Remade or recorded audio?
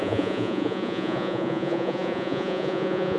remade